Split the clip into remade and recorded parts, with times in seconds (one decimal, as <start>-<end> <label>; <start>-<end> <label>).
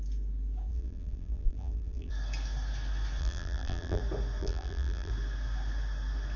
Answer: 0.0-0.7 recorded; 0.7-2.1 remade; 2.1-3.2 recorded; 3.2-4.0 remade; 4.0-4.4 recorded; 4.4-5.1 remade; 5.1-6.4 recorded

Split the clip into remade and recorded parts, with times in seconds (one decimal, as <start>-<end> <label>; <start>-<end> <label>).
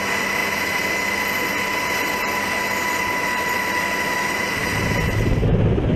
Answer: 0.0-6.0 recorded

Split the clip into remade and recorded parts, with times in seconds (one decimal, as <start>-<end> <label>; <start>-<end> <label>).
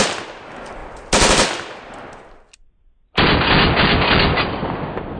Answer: 0.0-5.2 recorded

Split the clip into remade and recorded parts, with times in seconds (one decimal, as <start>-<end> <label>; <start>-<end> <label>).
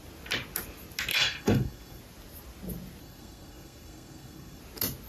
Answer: 0.0-1.1 recorded; 1.1-2.0 remade; 2.0-3.0 recorded; 3.0-4.6 remade; 4.6-5.1 recorded